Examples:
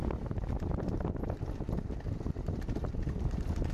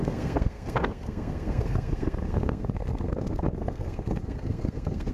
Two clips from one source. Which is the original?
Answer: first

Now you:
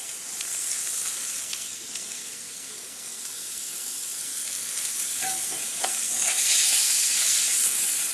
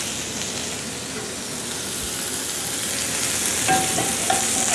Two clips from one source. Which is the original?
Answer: second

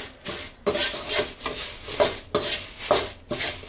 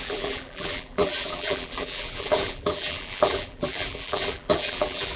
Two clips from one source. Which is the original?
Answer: first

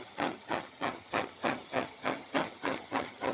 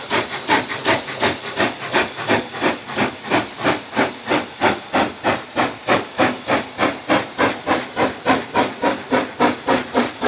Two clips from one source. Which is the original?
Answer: second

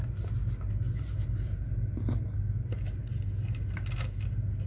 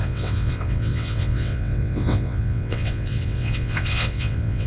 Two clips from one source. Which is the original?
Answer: first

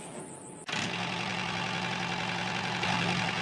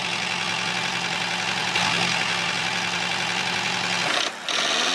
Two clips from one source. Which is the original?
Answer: second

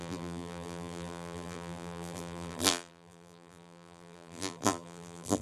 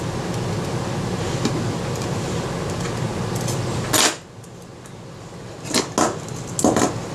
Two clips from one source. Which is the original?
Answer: second